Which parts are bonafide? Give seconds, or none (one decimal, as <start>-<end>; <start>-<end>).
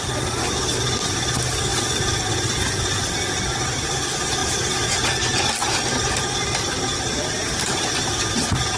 0.0-8.8